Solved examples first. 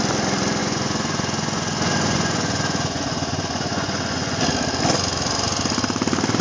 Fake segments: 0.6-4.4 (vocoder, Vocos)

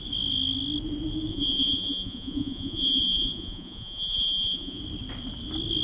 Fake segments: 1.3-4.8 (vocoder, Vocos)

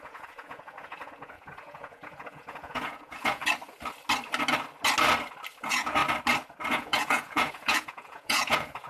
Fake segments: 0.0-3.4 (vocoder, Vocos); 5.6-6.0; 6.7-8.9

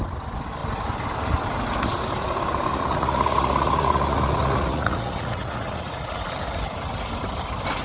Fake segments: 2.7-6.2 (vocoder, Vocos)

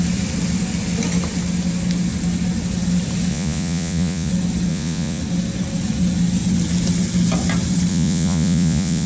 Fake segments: 3.3-4.3 (vocoder, Vocos); 4.7-5.2; 7.9-9.1

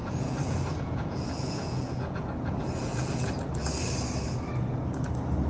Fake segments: 0.0-3.3 (vocoder, Vocos)

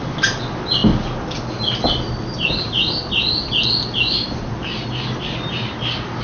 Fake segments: none

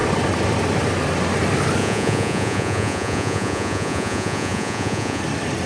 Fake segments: 1.8-5.2 (vocoder, Vocos)